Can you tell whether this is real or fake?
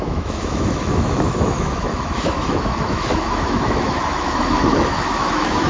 fake